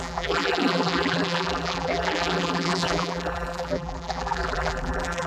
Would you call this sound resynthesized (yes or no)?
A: yes